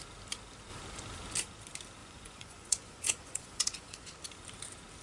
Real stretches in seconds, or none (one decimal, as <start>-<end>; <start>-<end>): 0.0-2.0; 4.1-5.0